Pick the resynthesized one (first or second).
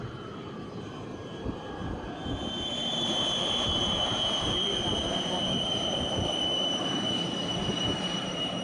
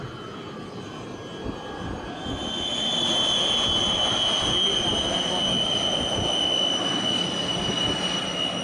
first